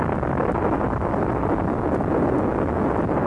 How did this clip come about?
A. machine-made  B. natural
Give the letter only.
B